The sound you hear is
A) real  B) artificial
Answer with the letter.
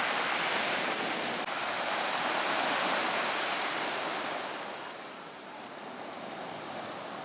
A